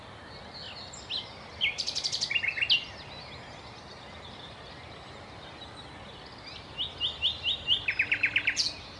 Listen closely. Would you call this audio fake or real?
real